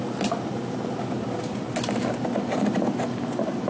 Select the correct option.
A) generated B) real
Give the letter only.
B